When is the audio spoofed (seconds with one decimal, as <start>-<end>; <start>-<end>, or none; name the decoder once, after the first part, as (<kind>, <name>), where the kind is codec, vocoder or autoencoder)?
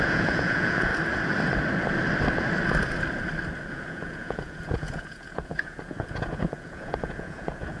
0.0-0.9 (vocoder, Vocos); 3.7-7.8